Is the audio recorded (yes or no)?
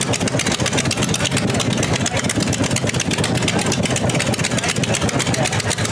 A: yes